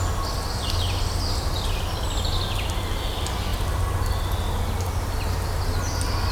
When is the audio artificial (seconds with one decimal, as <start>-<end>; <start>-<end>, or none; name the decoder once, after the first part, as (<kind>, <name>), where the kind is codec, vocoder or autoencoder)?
none